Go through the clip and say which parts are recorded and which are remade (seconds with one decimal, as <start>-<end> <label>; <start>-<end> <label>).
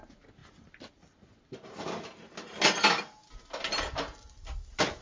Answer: 0.0-5.0 recorded